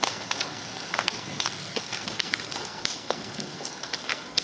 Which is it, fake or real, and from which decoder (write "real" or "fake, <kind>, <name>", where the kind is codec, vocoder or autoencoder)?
fake, codec, SNAC